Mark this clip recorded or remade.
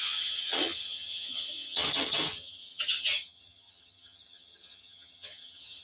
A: remade